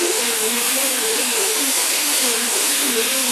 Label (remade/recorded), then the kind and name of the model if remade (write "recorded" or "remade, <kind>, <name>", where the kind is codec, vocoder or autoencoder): remade, autoencoder, DAC-VAE